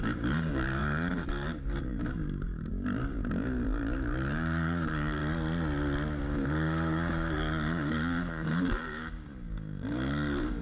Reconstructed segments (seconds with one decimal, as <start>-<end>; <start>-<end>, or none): 0.0-5.2; 6.2-10.6